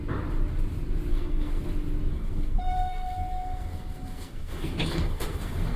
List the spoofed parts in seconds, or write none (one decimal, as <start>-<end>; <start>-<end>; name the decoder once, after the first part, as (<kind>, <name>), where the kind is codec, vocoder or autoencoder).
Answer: 1.1-1.6 (codec, SNAC); 2.1-5.8